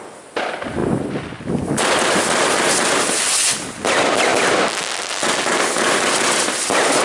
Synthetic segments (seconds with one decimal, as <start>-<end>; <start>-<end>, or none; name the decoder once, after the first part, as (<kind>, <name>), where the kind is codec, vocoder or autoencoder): none